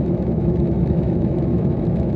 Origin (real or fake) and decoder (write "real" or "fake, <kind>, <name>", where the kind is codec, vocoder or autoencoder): fake, autoencoder, DAC-VAE